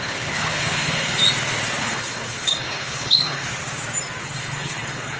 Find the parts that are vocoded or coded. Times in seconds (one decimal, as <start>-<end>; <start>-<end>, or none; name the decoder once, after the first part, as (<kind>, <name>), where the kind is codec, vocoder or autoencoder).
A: 0.0-1.2 (codec, HILCodec); 1.8-3.4; 4.2-5.2